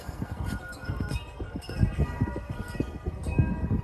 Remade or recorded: remade